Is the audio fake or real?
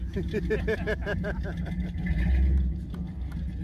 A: real